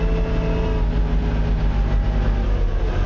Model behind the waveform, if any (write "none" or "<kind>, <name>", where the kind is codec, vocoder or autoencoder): none